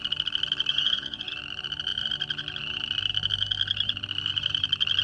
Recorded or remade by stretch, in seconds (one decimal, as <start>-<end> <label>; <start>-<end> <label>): 0.0-0.7 recorded; 0.7-1.3 remade; 1.3-5.0 recorded